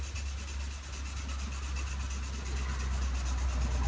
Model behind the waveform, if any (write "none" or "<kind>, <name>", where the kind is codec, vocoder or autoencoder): none